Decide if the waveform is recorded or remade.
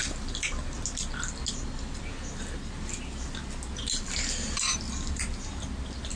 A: recorded